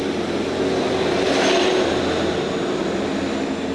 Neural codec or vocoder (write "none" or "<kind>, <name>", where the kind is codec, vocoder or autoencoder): none